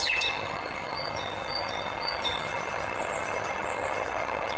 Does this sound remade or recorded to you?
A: remade